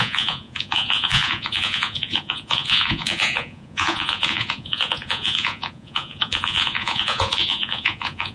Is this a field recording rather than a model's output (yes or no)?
no